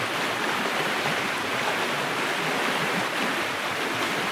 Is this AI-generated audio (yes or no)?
no